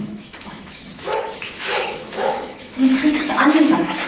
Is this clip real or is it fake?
fake